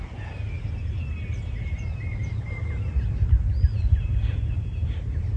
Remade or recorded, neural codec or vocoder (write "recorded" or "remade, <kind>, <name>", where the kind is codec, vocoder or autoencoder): recorded